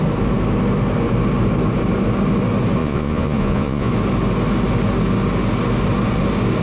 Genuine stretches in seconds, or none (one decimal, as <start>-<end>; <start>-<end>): 0.0-2.8; 3.9-6.6